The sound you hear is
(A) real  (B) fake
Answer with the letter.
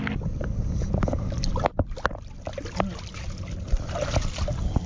A